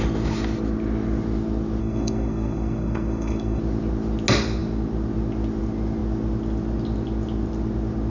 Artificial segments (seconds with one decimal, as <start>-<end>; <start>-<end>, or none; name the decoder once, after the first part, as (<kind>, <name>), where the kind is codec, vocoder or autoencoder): 1.8-3.6 (codec, SNAC)